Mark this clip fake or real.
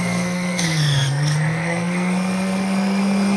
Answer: fake